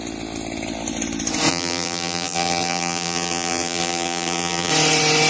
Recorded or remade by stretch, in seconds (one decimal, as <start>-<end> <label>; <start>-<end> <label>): 0.0-1.5 recorded; 1.5-4.7 remade; 4.7-5.3 recorded